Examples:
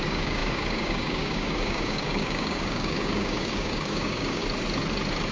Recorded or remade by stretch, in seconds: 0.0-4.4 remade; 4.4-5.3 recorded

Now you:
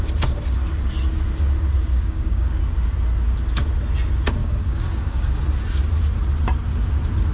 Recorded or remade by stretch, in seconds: 0.0-1.9 recorded; 1.9-2.6 remade; 2.6-4.4 recorded; 4.4-5.4 remade; 5.4-7.3 recorded

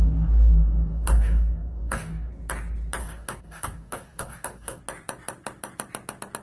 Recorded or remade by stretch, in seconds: 0.0-2.3 remade; 2.3-3.0 recorded; 3.0-4.8 remade; 4.8-6.4 recorded

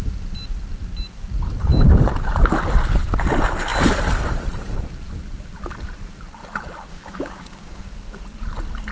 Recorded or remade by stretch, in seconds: 0.0-6.9 recorded; 6.9-7.8 remade; 7.8-8.9 recorded